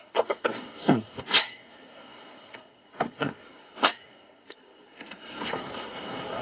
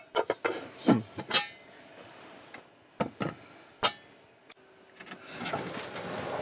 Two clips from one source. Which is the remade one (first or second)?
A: first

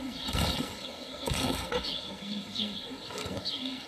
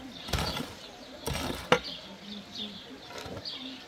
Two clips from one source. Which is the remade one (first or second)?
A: first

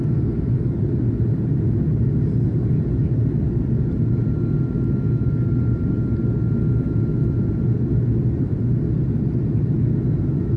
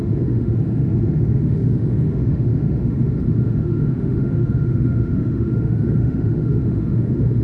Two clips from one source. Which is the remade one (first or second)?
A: second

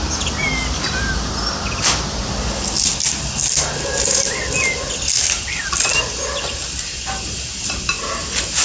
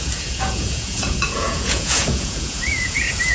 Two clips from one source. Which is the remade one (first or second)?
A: second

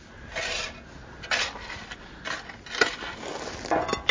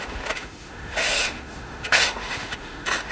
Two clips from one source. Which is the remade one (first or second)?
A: second